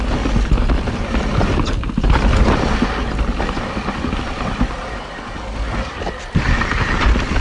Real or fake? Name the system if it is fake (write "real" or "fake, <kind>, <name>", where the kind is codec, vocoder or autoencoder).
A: real